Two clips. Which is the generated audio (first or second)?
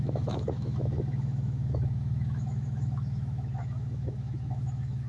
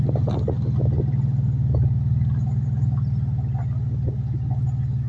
first